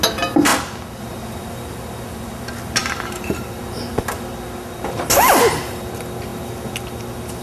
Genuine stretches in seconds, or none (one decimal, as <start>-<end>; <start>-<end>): 0.0-2.8; 3.6-7.4